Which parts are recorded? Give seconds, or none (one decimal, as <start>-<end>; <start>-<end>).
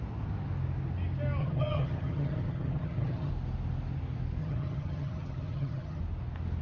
0.0-1.4; 3.3-4.4; 6.0-6.6